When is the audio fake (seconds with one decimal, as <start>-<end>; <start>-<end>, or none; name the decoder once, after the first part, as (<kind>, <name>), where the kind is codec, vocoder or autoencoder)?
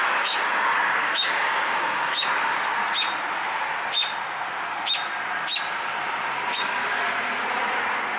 0.0-2.3 (codec, DAC)